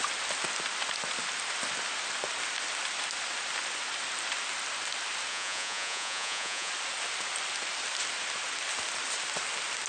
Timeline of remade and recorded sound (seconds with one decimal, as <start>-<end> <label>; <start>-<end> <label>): 0.0-5.3 recorded; 5.3-6.7 remade; 6.7-9.9 recorded